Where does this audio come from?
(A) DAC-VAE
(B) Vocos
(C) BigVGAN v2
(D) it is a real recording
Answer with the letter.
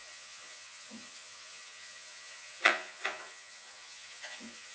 B